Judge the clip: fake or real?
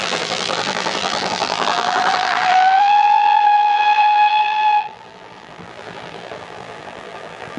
fake